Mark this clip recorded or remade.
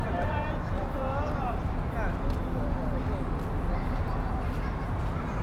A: recorded